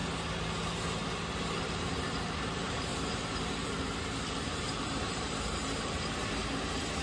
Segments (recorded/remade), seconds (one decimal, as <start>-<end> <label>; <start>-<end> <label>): 0.0-1.6 recorded; 1.6-2.9 remade; 2.9-4.3 recorded; 4.3-6.4 remade; 6.4-7.0 recorded